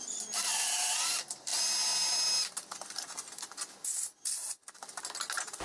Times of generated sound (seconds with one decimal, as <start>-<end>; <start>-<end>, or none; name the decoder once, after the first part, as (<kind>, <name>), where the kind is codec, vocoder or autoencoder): none